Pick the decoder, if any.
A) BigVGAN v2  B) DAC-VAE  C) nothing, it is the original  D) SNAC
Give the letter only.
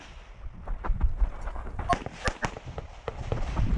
C